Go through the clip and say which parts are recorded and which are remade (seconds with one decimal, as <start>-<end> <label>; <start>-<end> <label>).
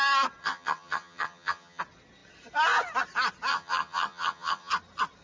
0.0-0.4 recorded; 0.4-1.8 remade; 1.8-3.5 recorded; 3.5-4.7 remade; 4.7-5.2 recorded